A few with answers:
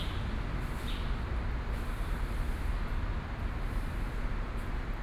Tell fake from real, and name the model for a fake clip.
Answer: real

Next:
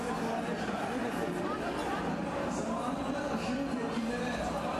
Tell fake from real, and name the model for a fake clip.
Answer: real